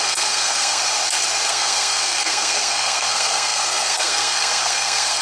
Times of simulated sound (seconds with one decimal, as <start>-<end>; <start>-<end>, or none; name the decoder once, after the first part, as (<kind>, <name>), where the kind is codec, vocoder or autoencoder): 0.0-0.8 (codec, SNAC); 1.5-5.2

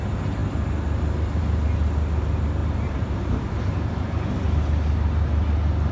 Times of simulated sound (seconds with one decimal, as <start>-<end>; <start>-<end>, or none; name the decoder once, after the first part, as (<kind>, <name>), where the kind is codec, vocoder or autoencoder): 2.6-4.5 (vocoder, BigVGAN v2)

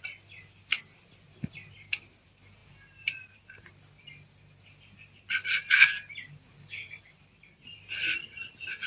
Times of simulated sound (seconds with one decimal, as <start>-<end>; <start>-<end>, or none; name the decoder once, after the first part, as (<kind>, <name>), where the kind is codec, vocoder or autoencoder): none

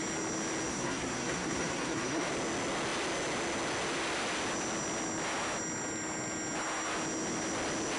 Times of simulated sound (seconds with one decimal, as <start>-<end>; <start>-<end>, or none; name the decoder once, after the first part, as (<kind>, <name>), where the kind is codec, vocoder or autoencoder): 0.7-2.3 (codec, SNAC)